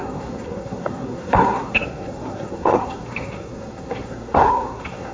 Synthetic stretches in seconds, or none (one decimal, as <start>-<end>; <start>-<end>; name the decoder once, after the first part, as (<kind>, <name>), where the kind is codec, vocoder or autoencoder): 0.0-5.1 (codec, SNAC)

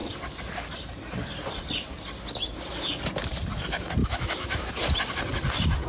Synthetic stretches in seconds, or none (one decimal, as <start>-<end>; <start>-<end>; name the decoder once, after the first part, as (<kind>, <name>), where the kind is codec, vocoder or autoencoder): 4.0-4.7 (autoencoder, DAC-VAE)

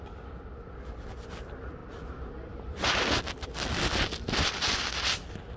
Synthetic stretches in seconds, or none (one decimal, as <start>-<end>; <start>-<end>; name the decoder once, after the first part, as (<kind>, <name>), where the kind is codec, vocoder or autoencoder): none